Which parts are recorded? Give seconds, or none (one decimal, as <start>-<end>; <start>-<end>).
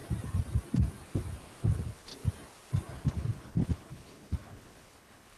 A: 0.0-1.6; 2.1-3.1